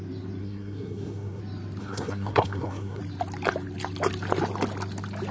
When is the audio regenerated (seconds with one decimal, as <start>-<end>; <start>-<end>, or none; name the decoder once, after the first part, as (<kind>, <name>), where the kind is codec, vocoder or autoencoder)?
0.4-1.4 (codec, SNAC); 1.8-3.0